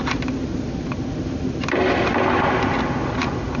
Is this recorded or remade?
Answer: recorded